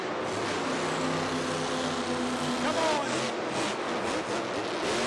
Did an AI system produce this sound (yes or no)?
no